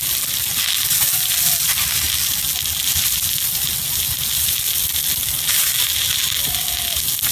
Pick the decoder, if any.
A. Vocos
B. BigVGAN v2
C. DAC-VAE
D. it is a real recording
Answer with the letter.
D